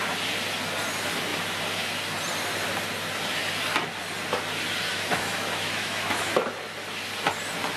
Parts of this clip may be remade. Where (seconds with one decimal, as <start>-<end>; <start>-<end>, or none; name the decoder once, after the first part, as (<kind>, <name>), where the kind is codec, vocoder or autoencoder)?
4.9-6.4 (autoencoder, DAC-VAE)